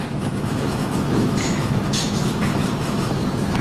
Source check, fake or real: fake